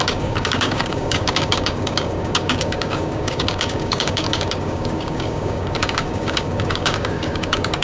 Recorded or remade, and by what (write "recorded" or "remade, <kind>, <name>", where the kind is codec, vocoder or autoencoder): remade, codec, DAC